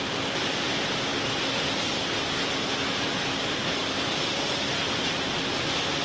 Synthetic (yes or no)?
no